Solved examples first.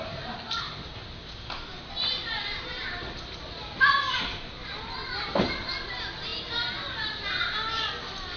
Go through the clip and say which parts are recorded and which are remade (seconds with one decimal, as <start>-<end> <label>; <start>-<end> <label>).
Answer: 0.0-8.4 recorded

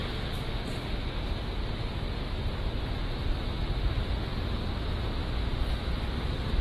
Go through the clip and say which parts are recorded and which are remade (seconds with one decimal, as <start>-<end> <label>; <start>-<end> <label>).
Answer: 0.0-6.6 recorded

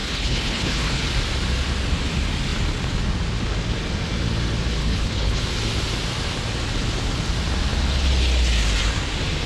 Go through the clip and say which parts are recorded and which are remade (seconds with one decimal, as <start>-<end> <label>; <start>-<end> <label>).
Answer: 0.0-1.0 remade; 1.0-4.8 recorded; 4.8-5.4 remade; 5.4-9.5 recorded